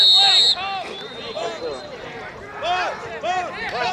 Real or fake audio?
real